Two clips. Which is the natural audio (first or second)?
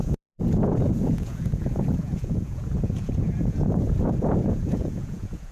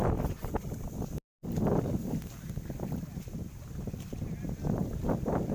second